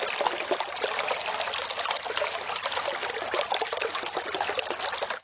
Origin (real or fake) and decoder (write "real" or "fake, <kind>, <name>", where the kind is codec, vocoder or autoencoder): real